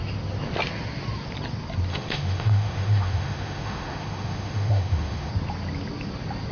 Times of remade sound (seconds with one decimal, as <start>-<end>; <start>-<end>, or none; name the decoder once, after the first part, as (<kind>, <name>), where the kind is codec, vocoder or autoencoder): 1.9-5.3 (autoencoder, DAC-VAE)